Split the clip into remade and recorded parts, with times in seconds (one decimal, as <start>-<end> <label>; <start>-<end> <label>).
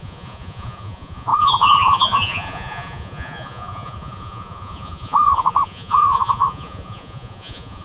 0.0-7.8 remade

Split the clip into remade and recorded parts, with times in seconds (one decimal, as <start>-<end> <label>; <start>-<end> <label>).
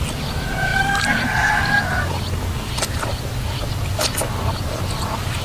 0.0-5.4 recorded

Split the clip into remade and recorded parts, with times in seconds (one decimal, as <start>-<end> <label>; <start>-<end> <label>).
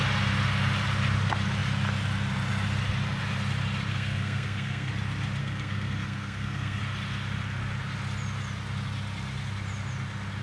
0.0-3.9 recorded; 3.9-4.9 remade; 4.9-5.4 recorded; 5.4-6.8 remade; 6.8-10.4 recorded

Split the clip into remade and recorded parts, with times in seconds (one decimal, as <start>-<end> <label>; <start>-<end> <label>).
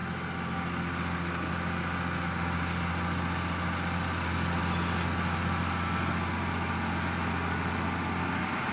0.0-8.7 recorded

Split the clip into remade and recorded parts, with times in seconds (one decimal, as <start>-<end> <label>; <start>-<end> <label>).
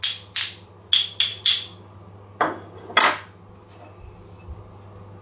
0.0-5.2 recorded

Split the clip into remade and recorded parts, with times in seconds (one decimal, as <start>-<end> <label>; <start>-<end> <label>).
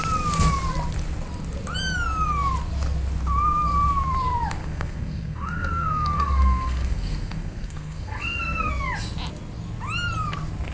0.0-4.6 recorded; 4.6-8.7 remade; 8.7-10.7 recorded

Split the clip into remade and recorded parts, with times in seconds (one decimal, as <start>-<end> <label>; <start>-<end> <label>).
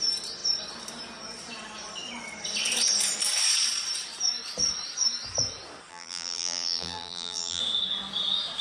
0.0-5.9 recorded; 5.9-7.6 remade; 7.6-8.6 recorded